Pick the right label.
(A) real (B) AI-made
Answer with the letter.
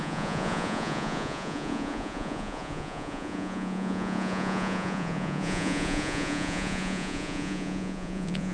B